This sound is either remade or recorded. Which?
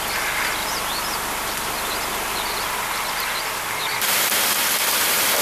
recorded